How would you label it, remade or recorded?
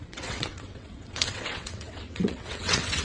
remade